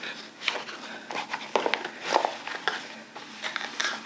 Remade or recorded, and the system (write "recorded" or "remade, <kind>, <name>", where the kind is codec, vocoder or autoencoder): recorded